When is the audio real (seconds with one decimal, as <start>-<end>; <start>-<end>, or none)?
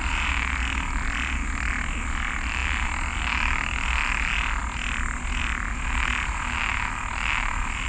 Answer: 0.0-7.9